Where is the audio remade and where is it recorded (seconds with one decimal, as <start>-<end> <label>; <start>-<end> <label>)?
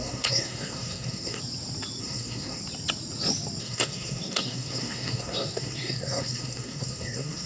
0.0-1.4 remade; 1.4-2.0 recorded; 2.0-2.6 remade; 2.6-3.6 recorded; 3.6-7.5 remade